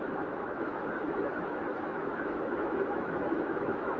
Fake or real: fake